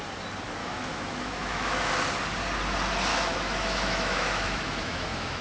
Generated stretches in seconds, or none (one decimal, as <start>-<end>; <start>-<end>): 0.6-1.9; 3.1-5.4